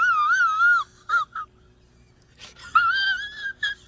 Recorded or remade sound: recorded